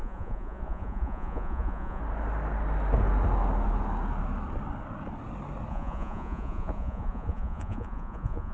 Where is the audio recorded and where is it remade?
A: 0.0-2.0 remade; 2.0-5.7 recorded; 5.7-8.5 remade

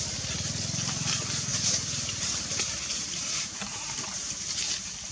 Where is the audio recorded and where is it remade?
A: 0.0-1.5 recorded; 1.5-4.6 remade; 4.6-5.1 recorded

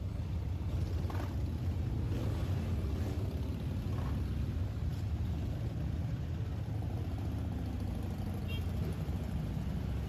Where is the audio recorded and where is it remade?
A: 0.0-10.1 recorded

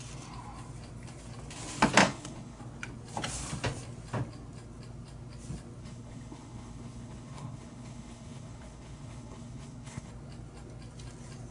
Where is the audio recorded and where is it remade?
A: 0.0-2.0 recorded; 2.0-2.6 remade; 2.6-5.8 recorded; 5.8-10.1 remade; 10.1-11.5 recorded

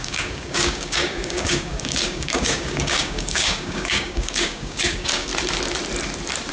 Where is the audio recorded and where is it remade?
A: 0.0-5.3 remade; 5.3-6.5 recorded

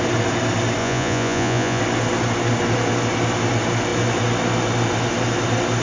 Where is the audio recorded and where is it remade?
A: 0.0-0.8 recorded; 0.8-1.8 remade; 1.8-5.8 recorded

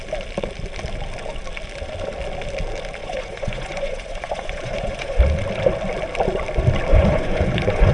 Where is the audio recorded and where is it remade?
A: 0.0-3.0 recorded; 3.0-5.2 remade; 5.2-6.9 recorded; 6.9-7.9 remade